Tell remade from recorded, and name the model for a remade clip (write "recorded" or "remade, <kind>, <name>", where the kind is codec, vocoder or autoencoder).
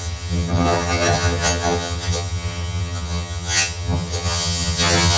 remade, vocoder, HiFi-GAN